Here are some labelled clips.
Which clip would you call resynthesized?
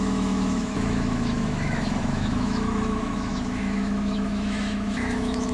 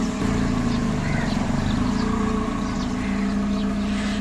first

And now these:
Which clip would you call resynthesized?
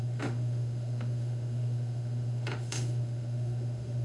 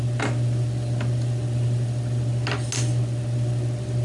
first